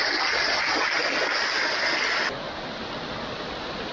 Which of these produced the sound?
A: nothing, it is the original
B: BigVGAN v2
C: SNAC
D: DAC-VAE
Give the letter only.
A